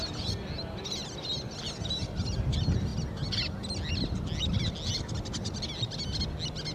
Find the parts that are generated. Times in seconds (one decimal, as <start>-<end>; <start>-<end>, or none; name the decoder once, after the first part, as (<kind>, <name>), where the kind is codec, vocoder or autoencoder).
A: none